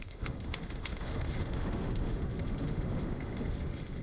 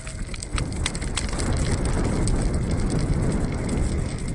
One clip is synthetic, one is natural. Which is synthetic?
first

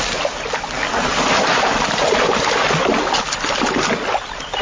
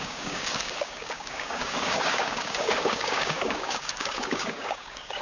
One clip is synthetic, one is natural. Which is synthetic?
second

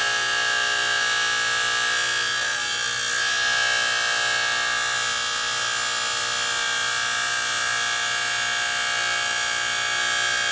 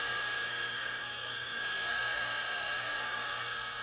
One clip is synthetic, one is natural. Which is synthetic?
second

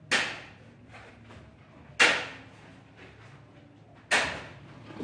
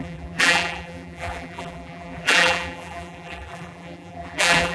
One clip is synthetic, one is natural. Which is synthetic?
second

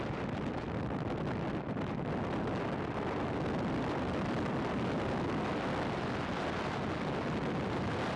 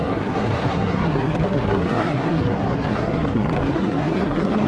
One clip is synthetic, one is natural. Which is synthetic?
second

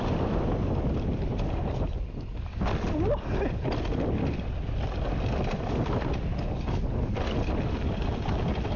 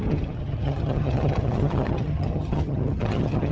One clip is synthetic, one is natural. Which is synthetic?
second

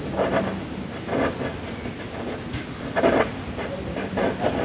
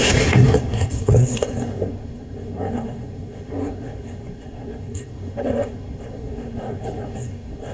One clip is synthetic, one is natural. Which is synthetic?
second